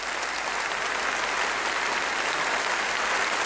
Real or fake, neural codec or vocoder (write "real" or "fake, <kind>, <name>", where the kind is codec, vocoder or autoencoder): real